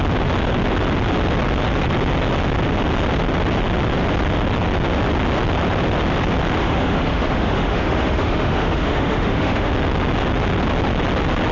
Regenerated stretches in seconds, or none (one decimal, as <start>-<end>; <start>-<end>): 6.6-9.7